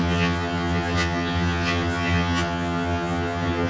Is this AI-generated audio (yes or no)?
yes